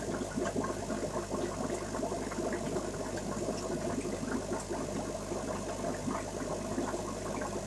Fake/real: real